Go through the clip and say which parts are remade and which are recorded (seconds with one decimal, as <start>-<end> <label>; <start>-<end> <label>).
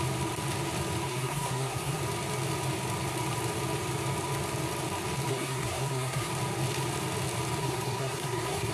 0.0-1.1 recorded; 1.1-2.0 remade; 2.0-5.3 recorded; 5.3-6.3 remade; 6.3-7.6 recorded; 7.6-8.7 remade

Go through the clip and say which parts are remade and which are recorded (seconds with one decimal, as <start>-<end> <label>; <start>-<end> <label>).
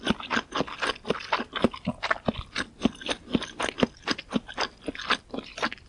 0.0-5.9 recorded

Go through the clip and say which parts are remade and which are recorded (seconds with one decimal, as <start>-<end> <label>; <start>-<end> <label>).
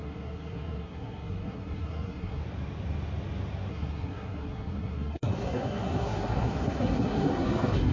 0.0-2.4 remade; 2.4-3.7 recorded; 3.7-7.9 remade